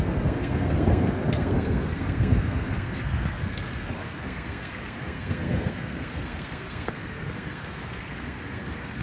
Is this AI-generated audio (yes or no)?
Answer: yes